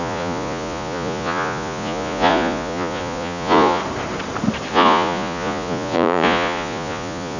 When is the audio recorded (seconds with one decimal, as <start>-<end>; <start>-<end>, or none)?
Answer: 3.8-4.7